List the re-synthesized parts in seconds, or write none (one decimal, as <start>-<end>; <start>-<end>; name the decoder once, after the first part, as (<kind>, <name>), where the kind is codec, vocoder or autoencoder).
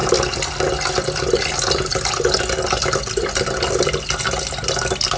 none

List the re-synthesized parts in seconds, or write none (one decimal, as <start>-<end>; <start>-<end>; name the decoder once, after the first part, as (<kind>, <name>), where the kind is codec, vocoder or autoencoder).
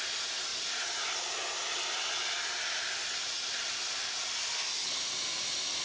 none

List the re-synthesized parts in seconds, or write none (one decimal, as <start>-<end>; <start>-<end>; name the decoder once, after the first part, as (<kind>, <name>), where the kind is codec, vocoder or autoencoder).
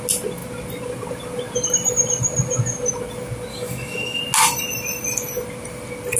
3.5-4.2 (autoencoder, DAC-VAE)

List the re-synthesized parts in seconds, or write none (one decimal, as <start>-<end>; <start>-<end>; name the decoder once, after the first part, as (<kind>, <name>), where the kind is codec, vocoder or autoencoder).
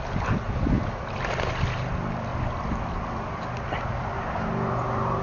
none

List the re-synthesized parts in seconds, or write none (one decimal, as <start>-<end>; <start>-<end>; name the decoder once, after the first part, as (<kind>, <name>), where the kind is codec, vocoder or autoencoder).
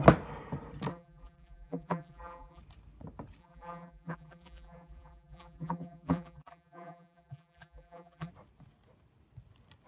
0.9-2.6 (vocoder, BigVGAN v2); 3.4-8.3